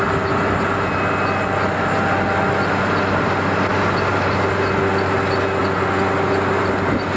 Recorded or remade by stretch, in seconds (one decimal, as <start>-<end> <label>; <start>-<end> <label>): 0.0-7.2 recorded